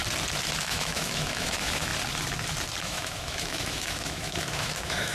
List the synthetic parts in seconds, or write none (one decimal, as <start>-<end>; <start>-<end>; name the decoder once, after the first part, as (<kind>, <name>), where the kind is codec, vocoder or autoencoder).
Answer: 0.6-1.9 (autoencoder, DAC-VAE); 2.8-5.1